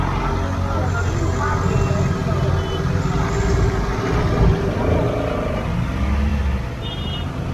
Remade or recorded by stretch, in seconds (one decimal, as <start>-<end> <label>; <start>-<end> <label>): 0.0-7.5 recorded